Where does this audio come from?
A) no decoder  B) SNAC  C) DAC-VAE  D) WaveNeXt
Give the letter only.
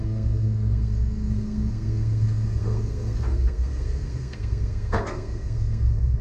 B